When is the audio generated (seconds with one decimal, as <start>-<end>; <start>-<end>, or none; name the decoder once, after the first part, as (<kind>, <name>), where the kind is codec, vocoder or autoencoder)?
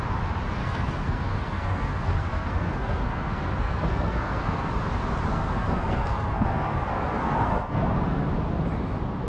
0.6-4.7 (codec, SNAC); 5.3-8.3